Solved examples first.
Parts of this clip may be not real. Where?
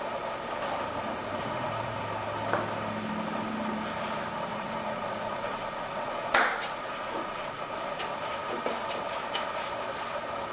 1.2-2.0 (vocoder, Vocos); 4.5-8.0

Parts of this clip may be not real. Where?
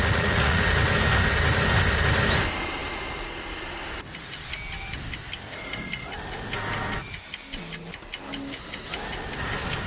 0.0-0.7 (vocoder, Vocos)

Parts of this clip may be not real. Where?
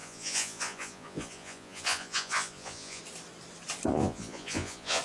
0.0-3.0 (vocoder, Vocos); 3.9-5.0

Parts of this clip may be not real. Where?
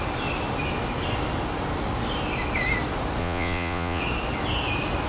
3.2-4.0 (vocoder, Vocos)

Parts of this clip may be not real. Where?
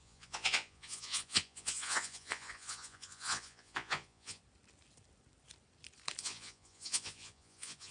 0.0-4.4 (vocoder, Vocos); 6.2-7.9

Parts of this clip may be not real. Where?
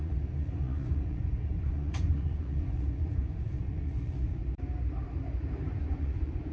0.0-4.4 (vocoder, Vocos); 5.8-6.5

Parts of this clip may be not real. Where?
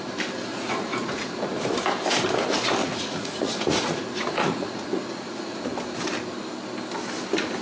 0.5-1.4 (vocoder, Vocos); 2.8-5.6